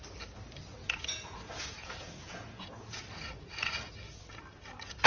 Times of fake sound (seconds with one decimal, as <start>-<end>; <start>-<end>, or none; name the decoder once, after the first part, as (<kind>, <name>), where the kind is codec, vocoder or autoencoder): 0.8-3.9 (vocoder, Vocos)